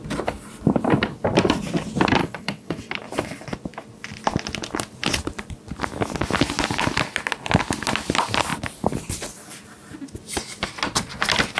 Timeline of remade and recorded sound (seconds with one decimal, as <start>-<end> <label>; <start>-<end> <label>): 0.0-2.2 recorded; 2.2-2.9 remade; 2.9-11.6 recorded